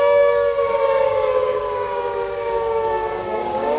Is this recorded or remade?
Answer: remade